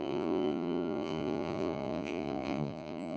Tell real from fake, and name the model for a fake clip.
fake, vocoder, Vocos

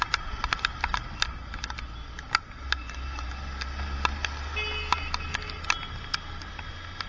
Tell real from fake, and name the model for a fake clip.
real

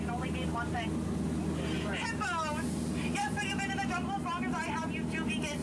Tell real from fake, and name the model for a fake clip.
real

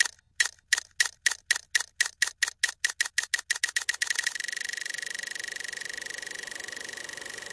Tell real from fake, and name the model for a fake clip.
real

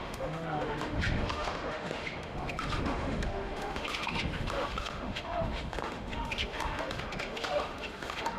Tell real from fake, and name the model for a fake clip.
fake, autoencoder, DAC-VAE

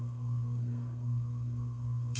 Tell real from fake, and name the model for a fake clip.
fake, codec, SNAC